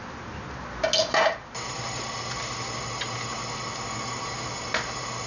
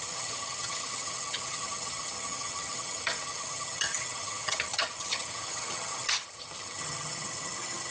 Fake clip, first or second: second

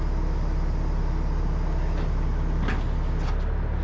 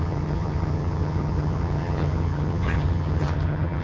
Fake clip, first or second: second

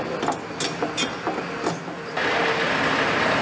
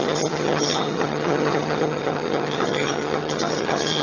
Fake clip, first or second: second